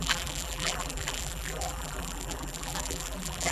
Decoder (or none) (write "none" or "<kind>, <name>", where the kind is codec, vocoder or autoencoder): vocoder, BigVGAN v2